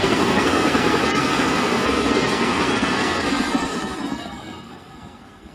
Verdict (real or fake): fake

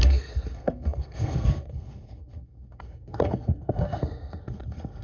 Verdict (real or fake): fake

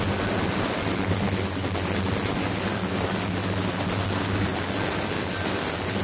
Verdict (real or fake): real